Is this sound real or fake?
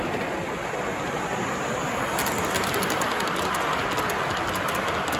real